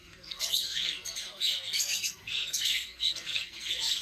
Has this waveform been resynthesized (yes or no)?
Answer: yes